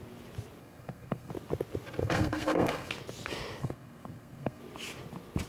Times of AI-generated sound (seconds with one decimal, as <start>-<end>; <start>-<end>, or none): 0.6-1.3; 2.0-2.9; 3.6-4.6